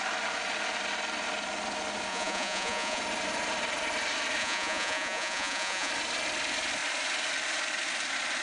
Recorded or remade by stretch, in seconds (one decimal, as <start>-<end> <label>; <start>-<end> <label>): 0.0-2.1 recorded; 2.1-3.0 remade; 3.0-4.4 recorded; 4.4-5.9 remade; 5.9-8.4 recorded